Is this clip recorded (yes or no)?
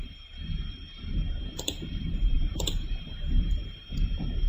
no